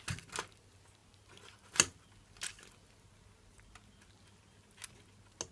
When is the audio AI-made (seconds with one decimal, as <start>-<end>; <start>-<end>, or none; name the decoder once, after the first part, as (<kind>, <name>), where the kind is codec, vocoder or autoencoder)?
none